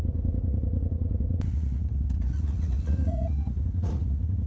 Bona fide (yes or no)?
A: no